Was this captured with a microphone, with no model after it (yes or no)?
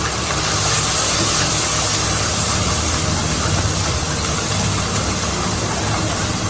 no